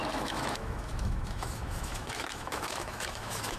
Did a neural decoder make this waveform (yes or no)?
yes